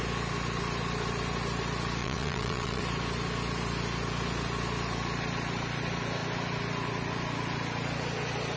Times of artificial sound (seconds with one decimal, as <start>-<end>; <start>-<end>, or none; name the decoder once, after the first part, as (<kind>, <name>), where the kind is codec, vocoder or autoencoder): 2.0-2.8 (vocoder, Vocos)